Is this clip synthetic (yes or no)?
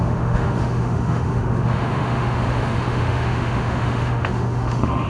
yes